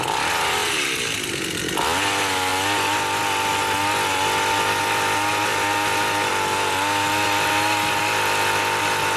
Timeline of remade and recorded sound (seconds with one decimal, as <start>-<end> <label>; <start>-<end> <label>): 0.0-9.2 recorded